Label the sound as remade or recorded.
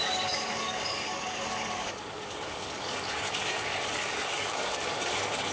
remade